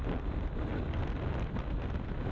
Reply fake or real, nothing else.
real